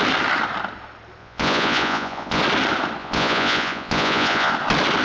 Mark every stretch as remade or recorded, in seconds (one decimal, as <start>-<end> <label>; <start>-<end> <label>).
0.0-1.2 recorded; 1.2-2.4 remade; 2.4-3.0 recorded; 3.0-4.5 remade; 4.5-5.0 recorded